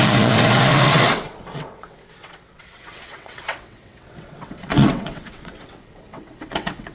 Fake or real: fake